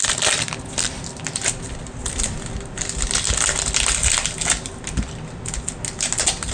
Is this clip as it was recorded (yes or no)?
yes